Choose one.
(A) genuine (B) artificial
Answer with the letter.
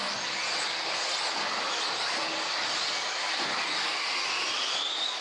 A